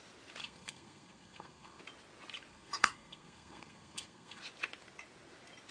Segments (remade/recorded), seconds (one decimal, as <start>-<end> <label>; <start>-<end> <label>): 0.0-0.4 recorded; 0.4-1.8 remade; 1.8-2.5 recorded; 2.5-4.4 remade; 4.4-5.7 recorded